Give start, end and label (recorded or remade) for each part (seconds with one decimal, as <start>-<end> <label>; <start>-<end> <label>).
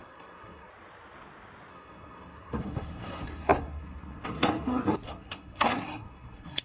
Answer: 0.0-0.7 remade; 0.7-1.7 recorded; 1.7-6.6 remade